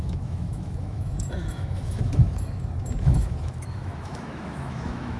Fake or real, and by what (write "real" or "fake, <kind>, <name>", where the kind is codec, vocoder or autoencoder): fake, autoencoder, DAC-VAE